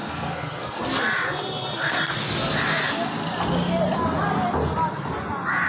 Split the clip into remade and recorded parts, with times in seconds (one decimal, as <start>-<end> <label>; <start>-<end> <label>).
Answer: 0.0-0.8 remade; 0.8-5.7 recorded